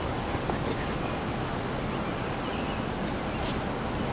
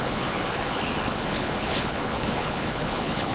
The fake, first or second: second